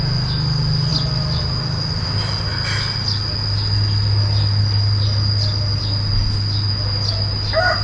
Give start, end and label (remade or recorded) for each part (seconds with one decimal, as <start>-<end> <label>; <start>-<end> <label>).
0.0-7.8 recorded